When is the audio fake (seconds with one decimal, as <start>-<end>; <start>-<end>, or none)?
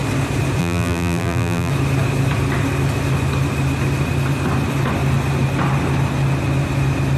0.6-1.7